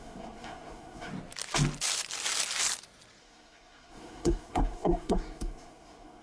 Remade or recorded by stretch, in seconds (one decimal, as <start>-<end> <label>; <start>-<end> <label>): 0.0-1.1 remade; 1.1-3.2 recorded; 3.2-6.2 remade